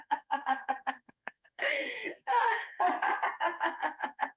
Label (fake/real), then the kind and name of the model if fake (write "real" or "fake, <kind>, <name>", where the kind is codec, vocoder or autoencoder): fake, codec, SNAC